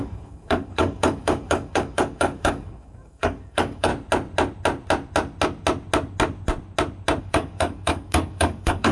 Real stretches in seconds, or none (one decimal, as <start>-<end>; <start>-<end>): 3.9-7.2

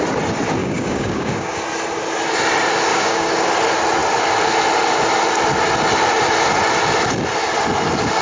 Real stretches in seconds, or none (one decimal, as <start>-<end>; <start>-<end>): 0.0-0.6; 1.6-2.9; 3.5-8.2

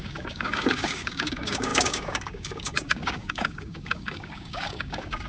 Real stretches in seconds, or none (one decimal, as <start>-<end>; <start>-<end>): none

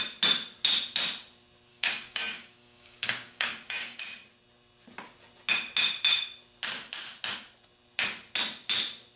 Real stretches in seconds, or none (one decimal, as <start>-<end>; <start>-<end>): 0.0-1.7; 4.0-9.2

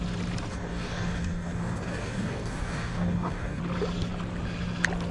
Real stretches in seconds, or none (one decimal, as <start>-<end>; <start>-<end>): 0.0-0.5; 3.6-5.1

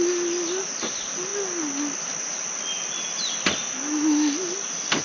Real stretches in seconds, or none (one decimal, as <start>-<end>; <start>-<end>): 0.0-5.0

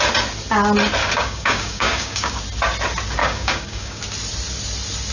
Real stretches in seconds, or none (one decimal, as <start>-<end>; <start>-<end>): 0.0-1.0; 2.4-3.2; 4.0-5.1